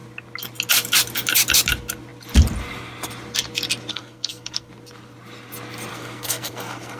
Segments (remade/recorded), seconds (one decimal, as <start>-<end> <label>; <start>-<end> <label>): 0.0-3.9 recorded; 3.9-4.7 remade; 4.7-5.9 recorded; 5.9-7.0 remade